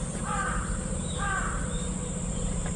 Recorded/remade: remade